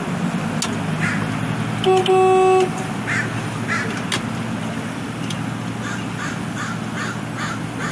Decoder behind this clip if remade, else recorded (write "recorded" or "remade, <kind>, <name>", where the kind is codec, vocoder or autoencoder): recorded